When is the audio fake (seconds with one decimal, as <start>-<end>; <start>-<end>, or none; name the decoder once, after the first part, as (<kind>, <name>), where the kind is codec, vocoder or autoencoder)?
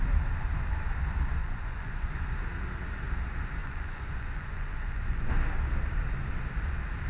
1.4-2.1 (vocoder, Vocos); 3.6-5.3